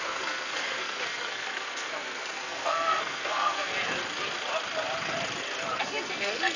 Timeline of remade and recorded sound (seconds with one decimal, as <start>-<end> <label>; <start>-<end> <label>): 0.0-3.7 remade; 3.7-5.7 recorded; 5.7-6.6 remade